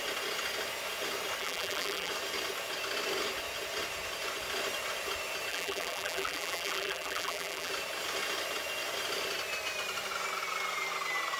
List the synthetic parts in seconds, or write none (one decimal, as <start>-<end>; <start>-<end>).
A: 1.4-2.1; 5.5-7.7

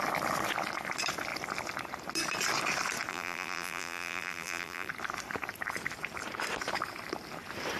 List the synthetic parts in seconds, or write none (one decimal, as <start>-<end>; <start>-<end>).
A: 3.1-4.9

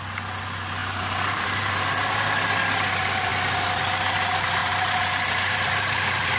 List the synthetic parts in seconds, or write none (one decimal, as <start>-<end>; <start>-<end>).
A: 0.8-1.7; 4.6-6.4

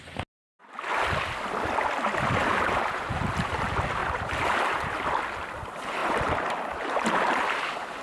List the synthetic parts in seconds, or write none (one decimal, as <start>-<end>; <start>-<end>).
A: 2.4-3.5; 4.0-4.9; 6.0-8.0

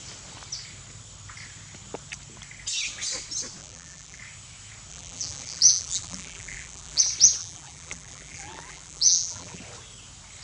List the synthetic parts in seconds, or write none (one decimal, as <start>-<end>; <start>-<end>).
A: 3.6-4.2; 4.9-7.0; 7.4-9.6

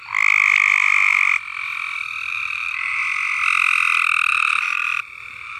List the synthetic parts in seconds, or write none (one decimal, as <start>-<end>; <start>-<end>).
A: 2.3-3.0; 4.3-5.6

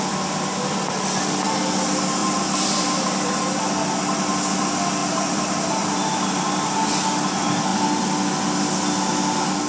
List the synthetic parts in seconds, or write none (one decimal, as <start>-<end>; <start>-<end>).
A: 2.2-3.6; 5.0-6.9